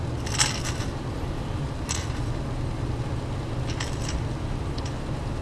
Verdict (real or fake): real